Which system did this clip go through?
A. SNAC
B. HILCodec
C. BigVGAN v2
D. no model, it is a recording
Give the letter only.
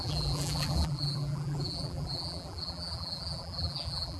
C